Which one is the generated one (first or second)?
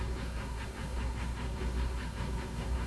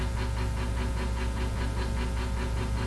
first